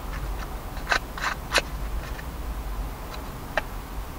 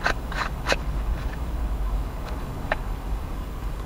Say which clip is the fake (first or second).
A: second